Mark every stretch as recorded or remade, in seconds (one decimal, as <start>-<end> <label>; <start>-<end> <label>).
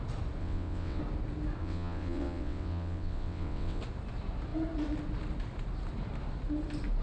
0.0-0.4 recorded; 0.4-1.0 remade; 1.0-1.6 recorded; 1.6-3.8 remade; 3.8-7.0 recorded